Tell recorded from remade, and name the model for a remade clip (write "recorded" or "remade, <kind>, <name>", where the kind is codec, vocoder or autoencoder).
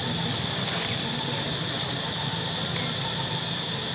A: recorded